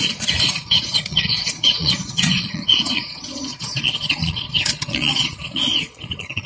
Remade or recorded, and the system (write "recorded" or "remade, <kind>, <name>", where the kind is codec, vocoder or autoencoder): remade, vocoder, Vocos